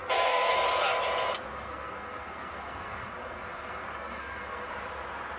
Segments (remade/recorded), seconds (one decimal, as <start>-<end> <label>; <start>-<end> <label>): 0.0-0.5 remade; 0.5-1.5 recorded; 1.5-4.7 remade; 4.7-5.4 recorded